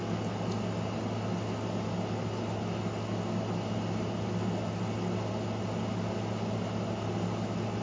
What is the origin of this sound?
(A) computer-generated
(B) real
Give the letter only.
B